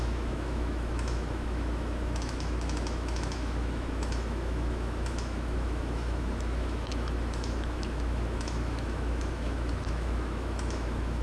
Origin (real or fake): fake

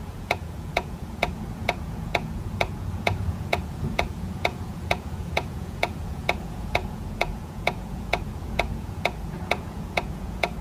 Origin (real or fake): fake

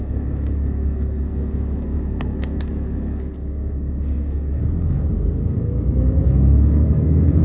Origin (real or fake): fake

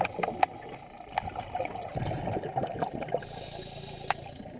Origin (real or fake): real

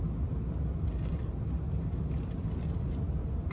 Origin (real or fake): real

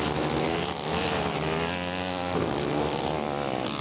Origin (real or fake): real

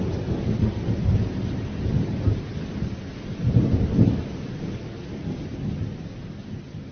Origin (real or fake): real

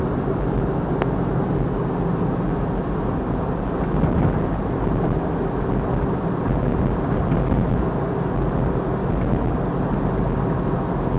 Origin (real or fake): real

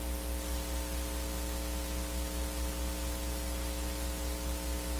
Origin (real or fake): real